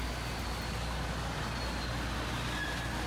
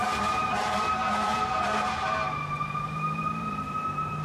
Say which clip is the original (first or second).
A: first